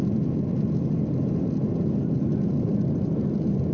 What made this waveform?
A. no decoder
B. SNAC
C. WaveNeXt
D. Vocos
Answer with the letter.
A